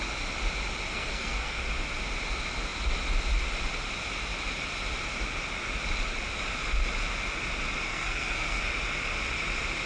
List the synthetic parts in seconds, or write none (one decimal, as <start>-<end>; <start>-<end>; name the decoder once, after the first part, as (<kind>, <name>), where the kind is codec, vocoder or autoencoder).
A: 0.9-1.6 (codec, SNAC); 7.9-8.6